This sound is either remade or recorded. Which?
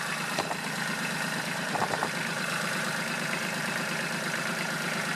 remade